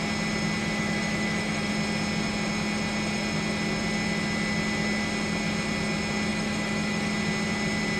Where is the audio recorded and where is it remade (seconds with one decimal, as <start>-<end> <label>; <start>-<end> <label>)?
0.0-0.6 recorded; 0.6-1.7 remade; 1.7-6.3 recorded; 6.3-7.1 remade; 7.1-8.0 recorded